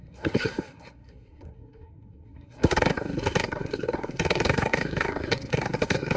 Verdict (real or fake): fake